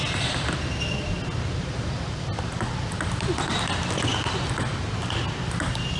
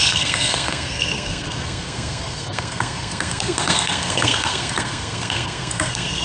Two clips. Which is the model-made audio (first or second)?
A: second